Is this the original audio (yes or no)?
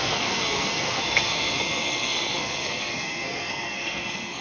no